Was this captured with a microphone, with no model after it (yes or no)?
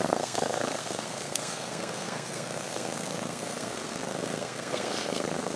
no